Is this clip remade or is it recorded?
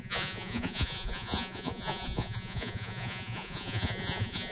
remade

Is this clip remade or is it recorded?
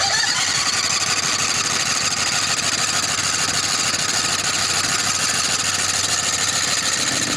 recorded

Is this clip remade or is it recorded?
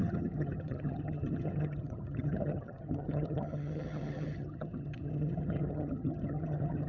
remade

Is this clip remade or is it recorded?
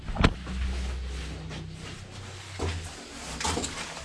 recorded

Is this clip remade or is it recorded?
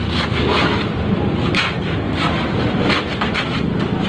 recorded